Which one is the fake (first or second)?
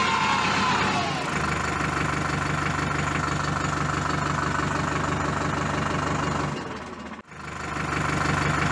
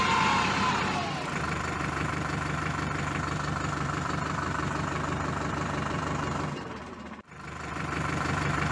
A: second